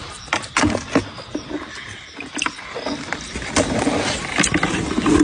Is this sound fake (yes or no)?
no